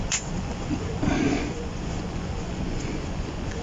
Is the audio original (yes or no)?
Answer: no